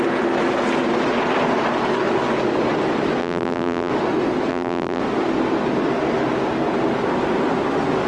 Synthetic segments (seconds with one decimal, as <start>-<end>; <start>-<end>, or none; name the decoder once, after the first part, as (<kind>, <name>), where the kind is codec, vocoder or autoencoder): 3.2-3.9 (vocoder, BigVGAN v2); 4.5-5.0